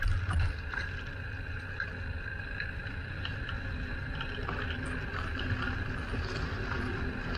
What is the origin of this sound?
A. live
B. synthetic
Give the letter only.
A